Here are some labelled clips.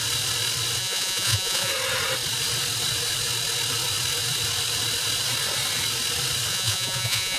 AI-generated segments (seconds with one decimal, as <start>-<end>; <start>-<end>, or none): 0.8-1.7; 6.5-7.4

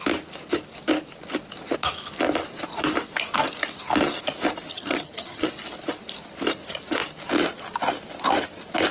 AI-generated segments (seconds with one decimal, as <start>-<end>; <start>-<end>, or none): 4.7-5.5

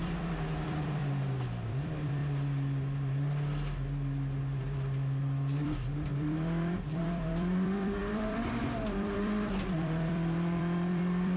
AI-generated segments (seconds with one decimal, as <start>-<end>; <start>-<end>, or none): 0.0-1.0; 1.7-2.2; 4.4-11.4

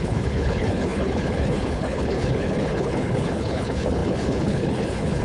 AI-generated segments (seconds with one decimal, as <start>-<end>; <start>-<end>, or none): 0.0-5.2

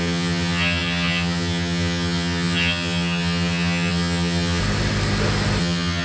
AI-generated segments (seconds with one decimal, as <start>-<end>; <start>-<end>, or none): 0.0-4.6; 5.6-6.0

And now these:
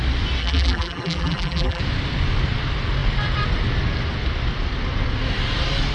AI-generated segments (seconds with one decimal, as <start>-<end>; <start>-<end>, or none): 0.4-1.8

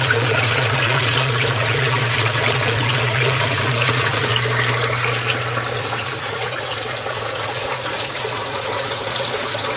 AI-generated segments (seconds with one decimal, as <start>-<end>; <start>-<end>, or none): 0.0-4.3; 5.8-9.8

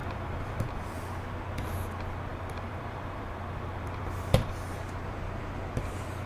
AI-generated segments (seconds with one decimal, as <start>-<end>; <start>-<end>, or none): 0.0-0.6; 2.3-4.8